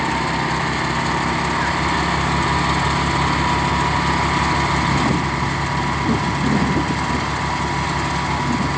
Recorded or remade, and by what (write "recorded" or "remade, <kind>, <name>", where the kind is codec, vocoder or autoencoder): recorded